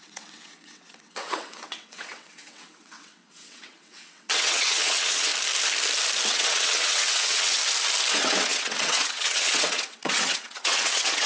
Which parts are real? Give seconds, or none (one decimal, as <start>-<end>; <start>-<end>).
5.3-6.3; 7.6-8.1

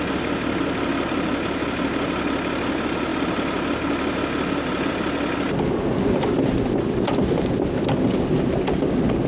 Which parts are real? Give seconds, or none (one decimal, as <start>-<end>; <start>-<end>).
0.0-9.3